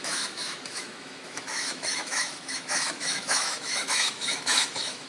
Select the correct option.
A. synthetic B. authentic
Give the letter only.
A